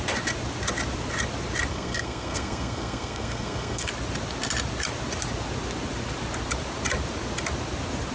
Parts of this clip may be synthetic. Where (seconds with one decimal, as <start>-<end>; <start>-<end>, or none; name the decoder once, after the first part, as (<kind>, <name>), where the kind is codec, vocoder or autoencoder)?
1.7-3.9 (codec, SNAC)